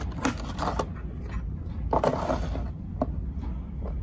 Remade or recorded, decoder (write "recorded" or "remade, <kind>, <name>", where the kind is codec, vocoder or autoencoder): recorded